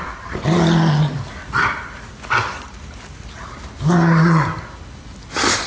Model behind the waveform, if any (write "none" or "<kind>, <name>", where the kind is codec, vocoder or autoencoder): none